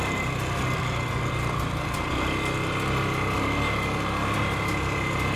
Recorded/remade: recorded